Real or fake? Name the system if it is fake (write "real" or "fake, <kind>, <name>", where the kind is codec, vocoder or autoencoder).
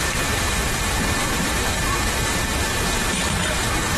fake, vocoder, BigVGAN v2